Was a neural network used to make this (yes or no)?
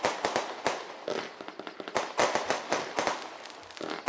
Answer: no